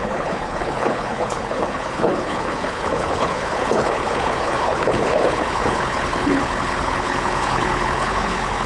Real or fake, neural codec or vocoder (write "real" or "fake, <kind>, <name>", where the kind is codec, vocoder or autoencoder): fake, codec, HILCodec